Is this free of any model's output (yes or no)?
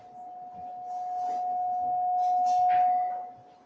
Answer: yes